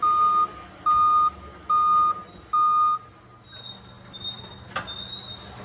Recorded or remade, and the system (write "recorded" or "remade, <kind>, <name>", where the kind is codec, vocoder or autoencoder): recorded